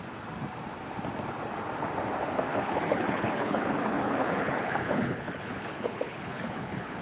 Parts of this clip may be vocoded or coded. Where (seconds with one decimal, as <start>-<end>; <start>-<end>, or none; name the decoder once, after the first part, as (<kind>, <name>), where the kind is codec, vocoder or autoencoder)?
2.5-7.0 (codec, HILCodec)